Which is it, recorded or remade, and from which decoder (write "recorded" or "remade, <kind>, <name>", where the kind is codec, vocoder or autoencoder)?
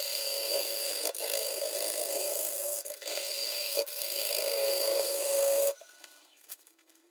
remade, codec, SNAC